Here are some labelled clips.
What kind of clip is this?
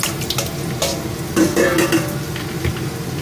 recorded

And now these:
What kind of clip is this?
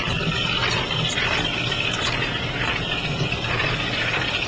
recorded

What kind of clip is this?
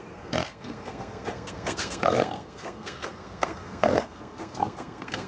remade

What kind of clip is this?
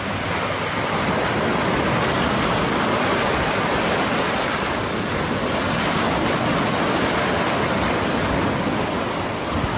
recorded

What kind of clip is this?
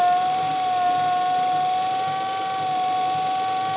recorded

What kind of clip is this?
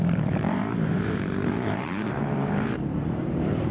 remade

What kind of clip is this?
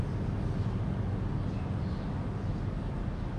recorded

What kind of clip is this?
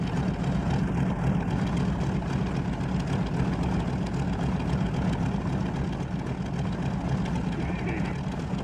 recorded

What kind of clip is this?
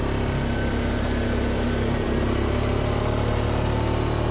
recorded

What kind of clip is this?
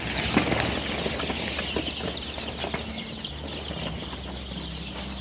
recorded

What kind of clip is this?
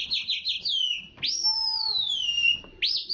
recorded